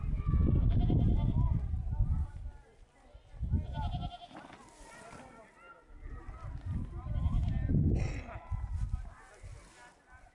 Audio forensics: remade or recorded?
recorded